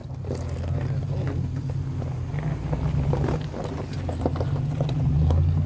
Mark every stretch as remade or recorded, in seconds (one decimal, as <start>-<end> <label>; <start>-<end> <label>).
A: 0.0-5.7 recorded